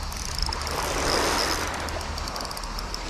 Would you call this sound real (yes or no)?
yes